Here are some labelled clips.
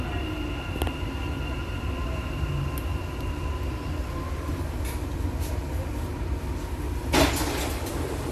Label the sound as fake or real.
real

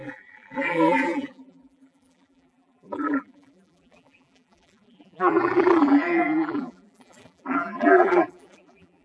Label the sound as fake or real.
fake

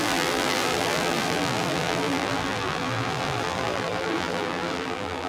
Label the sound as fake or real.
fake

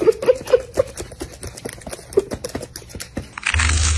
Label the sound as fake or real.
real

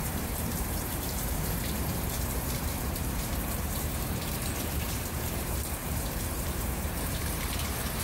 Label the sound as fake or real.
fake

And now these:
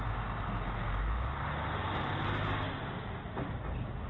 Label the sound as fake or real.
real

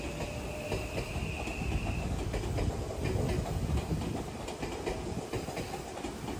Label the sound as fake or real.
real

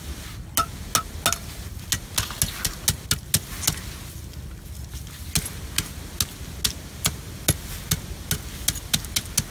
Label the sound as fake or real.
real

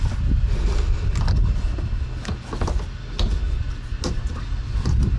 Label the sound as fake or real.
real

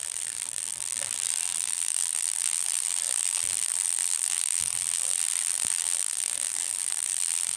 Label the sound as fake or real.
fake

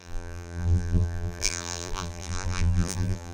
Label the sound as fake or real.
fake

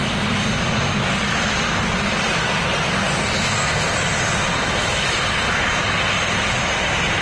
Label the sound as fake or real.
real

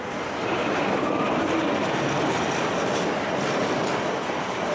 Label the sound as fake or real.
real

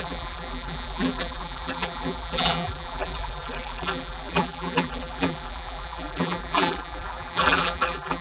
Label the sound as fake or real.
fake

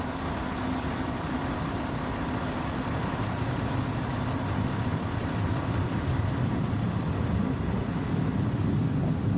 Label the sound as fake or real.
real